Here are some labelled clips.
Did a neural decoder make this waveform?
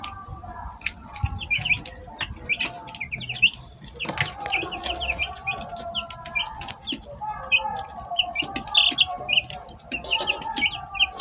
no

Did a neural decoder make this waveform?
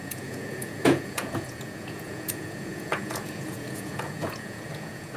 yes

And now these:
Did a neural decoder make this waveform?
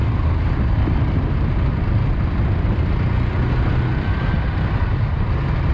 no